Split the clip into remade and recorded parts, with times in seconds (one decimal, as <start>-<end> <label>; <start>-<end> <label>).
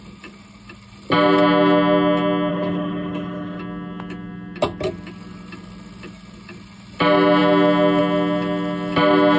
0.0-2.5 recorded; 2.5-3.6 remade; 3.6-9.4 recorded